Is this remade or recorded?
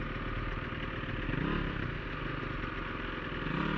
recorded